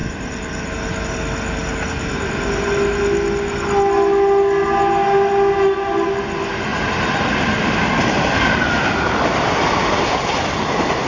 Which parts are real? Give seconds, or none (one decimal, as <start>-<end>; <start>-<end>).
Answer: 0.7-6.7; 7.3-11.1